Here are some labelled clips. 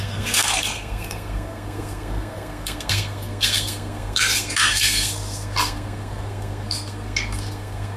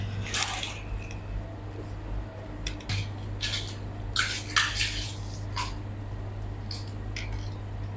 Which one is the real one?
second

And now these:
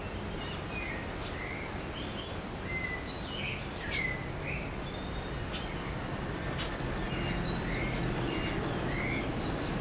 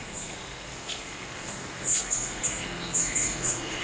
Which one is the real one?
first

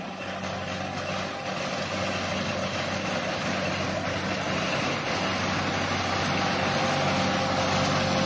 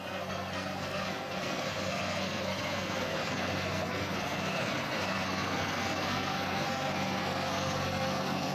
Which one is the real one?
first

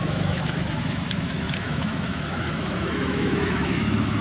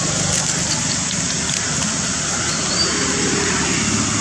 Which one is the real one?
second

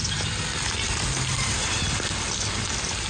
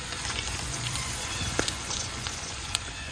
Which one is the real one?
first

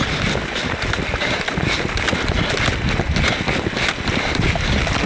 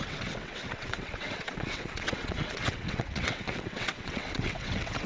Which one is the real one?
first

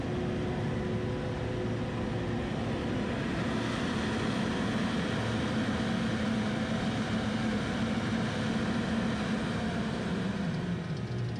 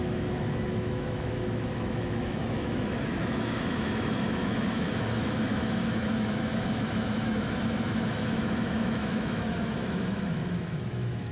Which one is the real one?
first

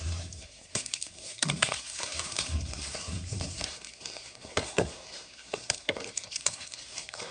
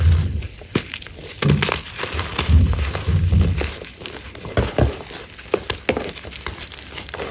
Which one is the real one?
second